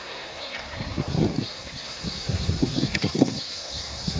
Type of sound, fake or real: fake